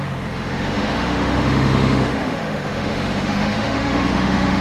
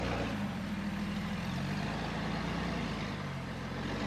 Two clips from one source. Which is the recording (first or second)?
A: second